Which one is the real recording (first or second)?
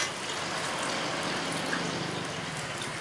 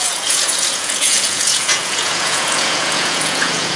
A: first